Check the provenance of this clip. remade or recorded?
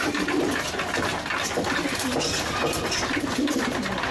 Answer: recorded